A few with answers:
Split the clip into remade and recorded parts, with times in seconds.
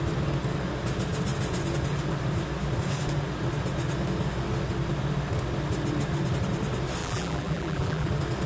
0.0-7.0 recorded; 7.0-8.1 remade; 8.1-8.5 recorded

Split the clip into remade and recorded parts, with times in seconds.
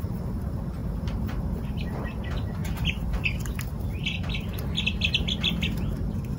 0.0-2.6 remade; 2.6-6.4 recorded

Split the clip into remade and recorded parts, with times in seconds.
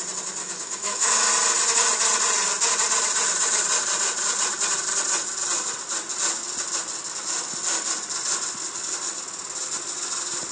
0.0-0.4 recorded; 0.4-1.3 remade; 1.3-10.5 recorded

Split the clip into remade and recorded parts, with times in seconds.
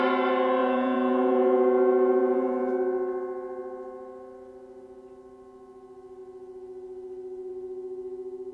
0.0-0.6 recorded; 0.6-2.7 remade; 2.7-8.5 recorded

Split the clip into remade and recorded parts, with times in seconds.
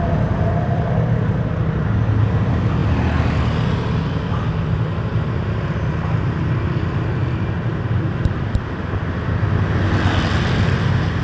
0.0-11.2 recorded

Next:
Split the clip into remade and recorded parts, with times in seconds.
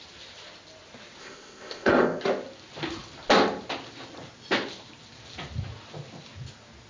0.0-1.2 recorded; 1.2-2.2 remade; 2.2-6.9 recorded